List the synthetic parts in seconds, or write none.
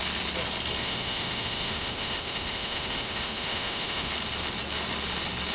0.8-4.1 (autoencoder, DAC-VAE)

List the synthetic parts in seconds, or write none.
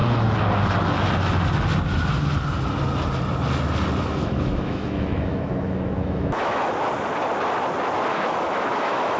4.2-6.6 (autoencoder, DAC-VAE); 8.1-9.2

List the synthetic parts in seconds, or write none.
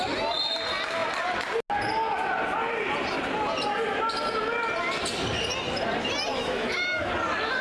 6.3-7.1 (autoencoder, DAC-VAE)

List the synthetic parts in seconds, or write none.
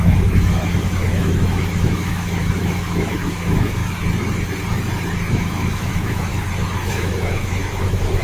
0.0-3.8 (autoencoder, DAC-VAE); 5.3-6.3; 6.9-8.2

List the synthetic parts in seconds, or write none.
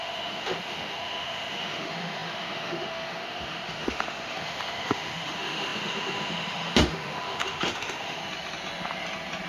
0.0-8.2 (autoencoder, DAC-VAE)